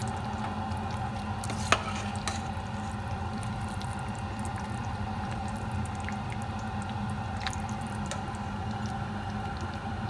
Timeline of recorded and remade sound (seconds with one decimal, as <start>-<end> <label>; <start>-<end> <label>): 0.0-3.1 recorded; 3.1-5.4 remade; 5.4-7.5 recorded; 7.5-10.1 remade